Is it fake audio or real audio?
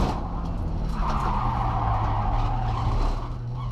real